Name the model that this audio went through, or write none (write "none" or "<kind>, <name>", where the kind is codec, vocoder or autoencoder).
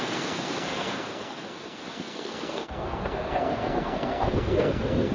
codec, SNAC